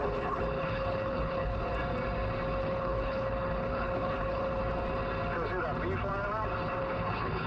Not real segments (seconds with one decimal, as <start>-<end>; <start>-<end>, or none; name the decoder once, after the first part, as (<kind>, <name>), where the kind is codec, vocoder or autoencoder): 0.0-1.7 (codec, HILCodec); 2.6-4.6; 6.8-7.5